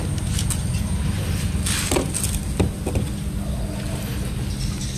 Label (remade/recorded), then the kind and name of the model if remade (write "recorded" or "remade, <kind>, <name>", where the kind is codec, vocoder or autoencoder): recorded